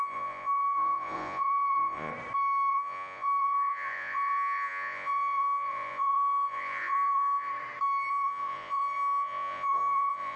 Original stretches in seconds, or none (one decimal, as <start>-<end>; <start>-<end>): 2.1-2.7; 7.5-8.1